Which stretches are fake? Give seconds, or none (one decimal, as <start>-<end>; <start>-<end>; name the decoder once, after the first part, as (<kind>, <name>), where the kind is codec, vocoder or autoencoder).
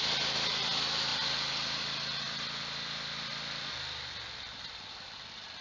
none